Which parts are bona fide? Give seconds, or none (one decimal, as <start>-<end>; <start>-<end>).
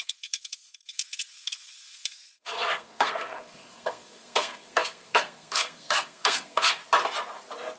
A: 6.8-7.8